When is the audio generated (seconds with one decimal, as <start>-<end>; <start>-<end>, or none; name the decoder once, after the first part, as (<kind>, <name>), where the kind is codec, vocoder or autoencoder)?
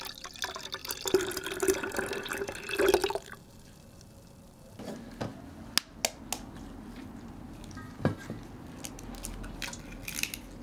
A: 0.8-2.3 (vocoder, BigVGAN v2); 3.0-4.0